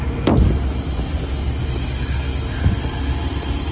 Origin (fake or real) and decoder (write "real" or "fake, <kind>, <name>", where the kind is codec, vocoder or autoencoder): real